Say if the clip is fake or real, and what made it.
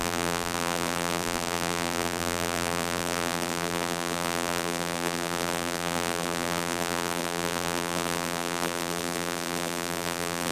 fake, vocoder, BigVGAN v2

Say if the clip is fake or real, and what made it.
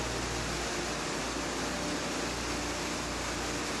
real